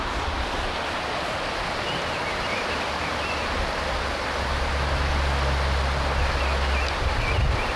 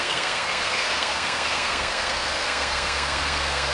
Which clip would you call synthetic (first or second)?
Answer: second